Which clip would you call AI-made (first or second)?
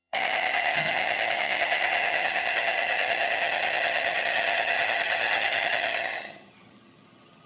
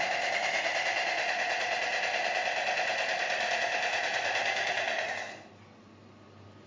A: first